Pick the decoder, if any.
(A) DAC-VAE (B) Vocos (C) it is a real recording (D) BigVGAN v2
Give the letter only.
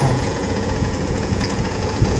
B